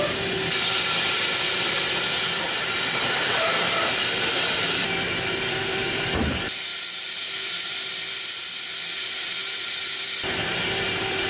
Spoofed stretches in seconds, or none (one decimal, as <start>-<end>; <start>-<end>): 0.0-6.7; 7.5-11.3